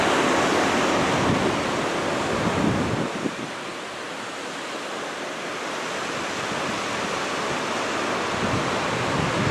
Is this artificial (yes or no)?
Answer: no